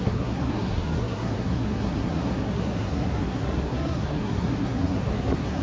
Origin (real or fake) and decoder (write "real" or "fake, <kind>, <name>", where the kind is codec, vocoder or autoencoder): fake, codec, SNAC